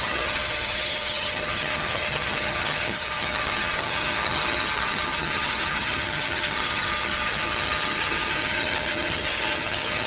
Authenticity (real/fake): fake